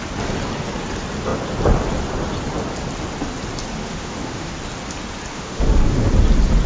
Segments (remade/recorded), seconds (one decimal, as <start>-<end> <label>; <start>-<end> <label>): 0.0-3.8 recorded; 3.8-4.5 remade; 4.5-5.3 recorded; 5.3-6.1 remade; 6.1-6.7 recorded

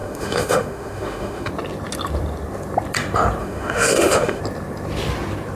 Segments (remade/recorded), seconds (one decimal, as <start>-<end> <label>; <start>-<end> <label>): 0.0-1.5 remade; 1.5-3.4 recorded; 3.4-4.4 remade; 4.4-5.6 recorded

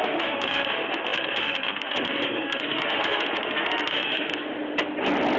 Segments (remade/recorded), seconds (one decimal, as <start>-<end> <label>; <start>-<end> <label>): 0.0-4.3 remade; 4.3-5.4 recorded

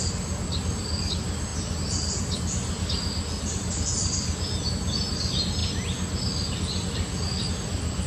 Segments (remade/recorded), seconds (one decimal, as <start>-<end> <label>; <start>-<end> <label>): 0.0-8.1 recorded

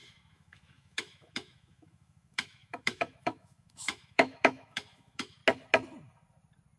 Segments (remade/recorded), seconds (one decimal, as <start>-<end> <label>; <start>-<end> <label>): 0.0-5.4 remade; 5.4-6.8 recorded